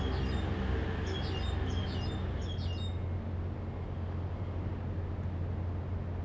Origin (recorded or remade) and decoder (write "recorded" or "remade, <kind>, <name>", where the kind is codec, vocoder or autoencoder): recorded